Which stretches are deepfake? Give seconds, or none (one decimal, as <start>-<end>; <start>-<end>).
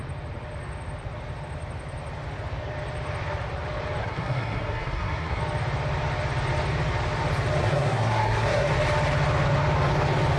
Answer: 4.0-5.4; 7.6-8.7